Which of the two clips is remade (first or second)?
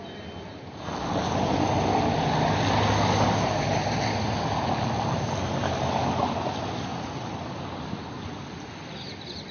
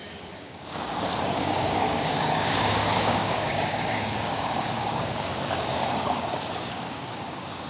second